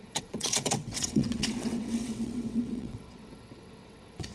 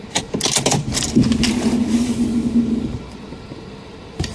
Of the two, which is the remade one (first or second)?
first